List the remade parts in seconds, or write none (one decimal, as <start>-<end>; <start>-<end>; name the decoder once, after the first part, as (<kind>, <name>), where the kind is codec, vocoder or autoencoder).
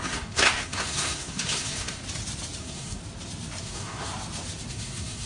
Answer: 0.0-2.0 (codec, SNAC); 2.6-3.0; 3.6-4.1; 4.7-5.3